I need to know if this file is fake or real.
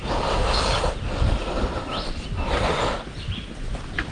real